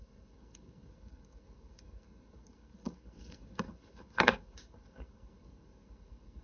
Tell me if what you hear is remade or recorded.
remade